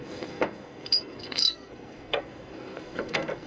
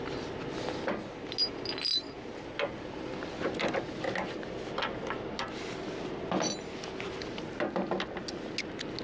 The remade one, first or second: first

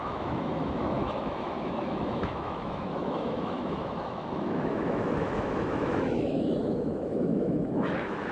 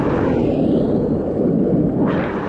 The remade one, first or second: first